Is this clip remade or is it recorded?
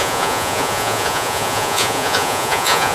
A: remade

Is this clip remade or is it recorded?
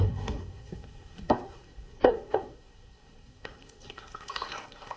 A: remade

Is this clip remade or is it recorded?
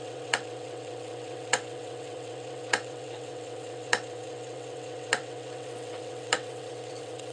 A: remade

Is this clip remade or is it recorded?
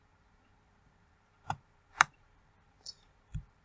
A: remade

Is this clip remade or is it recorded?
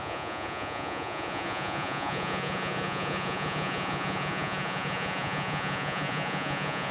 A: remade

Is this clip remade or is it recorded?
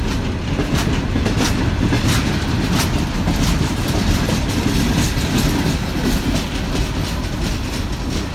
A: recorded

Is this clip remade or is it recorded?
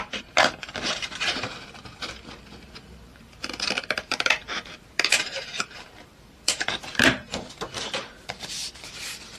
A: remade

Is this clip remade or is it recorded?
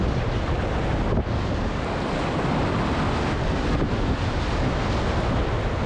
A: recorded